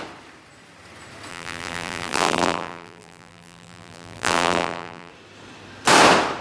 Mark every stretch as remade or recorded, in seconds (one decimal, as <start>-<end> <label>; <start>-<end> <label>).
0.0-1.3 recorded; 1.3-5.1 remade; 5.1-6.4 recorded